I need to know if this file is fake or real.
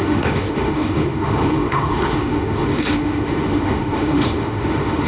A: fake